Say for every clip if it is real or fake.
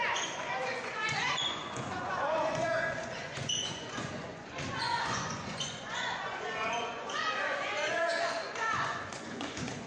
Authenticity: fake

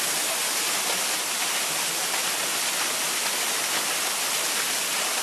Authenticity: real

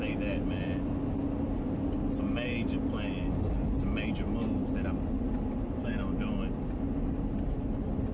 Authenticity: real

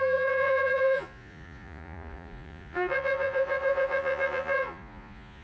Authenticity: fake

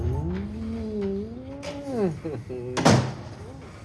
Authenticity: real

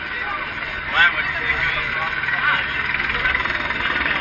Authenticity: real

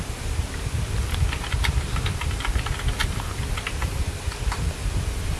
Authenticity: real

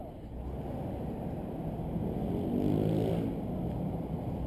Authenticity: real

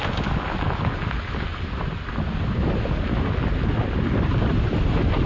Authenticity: real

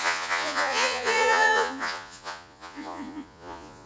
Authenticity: fake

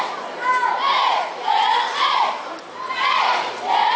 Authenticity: real